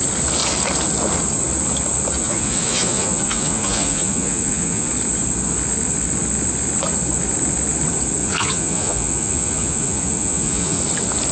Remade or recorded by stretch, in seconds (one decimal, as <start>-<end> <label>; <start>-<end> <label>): 0.0-2.2 recorded; 2.2-4.9 remade; 4.9-8.2 recorded; 8.2-10.8 remade; 10.8-11.3 recorded